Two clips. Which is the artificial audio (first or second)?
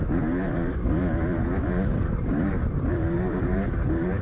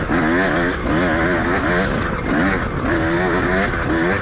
first